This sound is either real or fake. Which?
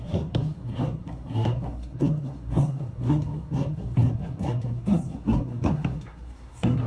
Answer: fake